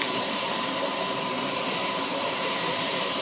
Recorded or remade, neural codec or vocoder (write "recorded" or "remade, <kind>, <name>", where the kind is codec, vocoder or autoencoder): remade, vocoder, BigVGAN v2